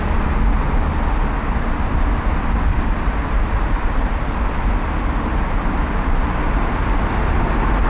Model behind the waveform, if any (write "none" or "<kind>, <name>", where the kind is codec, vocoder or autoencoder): none